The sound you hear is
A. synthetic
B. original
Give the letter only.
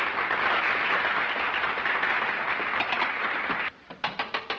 B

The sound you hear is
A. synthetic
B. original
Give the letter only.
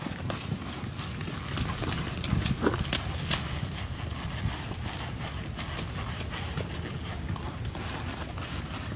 B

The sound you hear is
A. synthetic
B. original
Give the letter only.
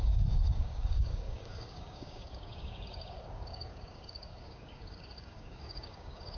A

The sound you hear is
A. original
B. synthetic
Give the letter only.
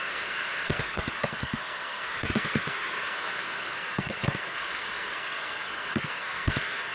B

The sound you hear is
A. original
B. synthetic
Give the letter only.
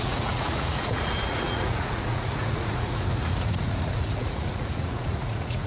B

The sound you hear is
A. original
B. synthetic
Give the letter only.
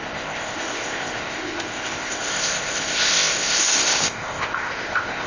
B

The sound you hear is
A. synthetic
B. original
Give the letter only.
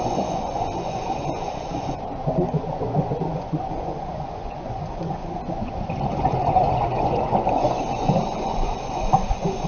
A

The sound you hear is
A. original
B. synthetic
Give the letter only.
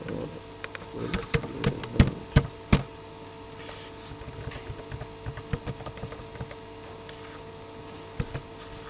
A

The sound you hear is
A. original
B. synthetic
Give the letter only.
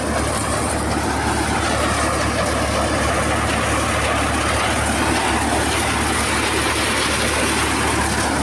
A